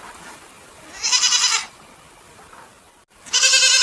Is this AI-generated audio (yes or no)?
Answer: no